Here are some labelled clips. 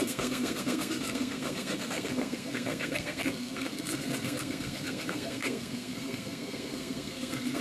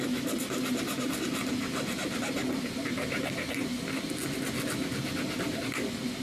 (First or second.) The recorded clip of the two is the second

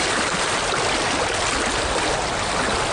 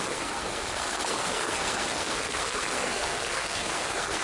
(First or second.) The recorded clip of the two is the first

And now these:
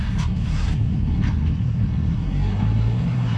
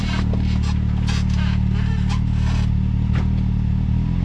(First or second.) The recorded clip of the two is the second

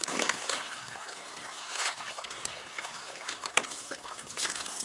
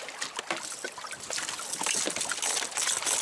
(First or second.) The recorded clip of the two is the second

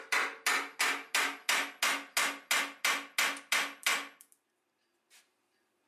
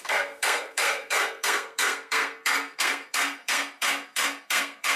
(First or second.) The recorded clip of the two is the first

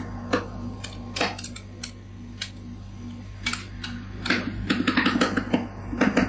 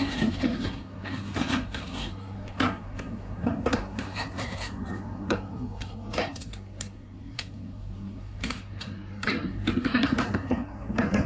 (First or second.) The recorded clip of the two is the first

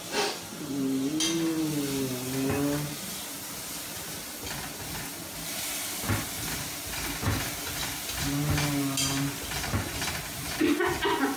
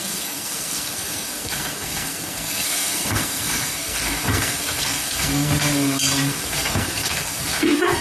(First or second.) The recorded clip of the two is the first